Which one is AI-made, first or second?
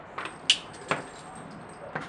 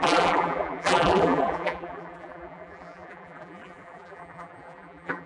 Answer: second